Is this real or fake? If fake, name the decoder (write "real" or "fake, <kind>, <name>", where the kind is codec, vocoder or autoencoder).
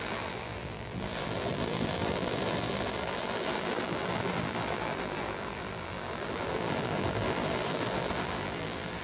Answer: fake, vocoder, BigVGAN v2